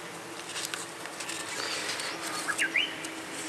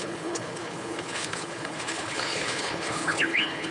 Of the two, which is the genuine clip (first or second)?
first